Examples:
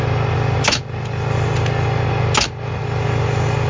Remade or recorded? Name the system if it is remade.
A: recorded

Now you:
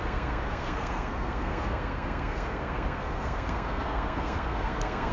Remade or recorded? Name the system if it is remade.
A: remade, codec, SNAC